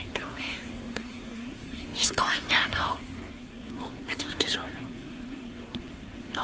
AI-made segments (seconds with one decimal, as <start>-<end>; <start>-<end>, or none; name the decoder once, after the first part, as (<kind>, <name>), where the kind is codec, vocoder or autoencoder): 0.0-6.4 (codec, SNAC)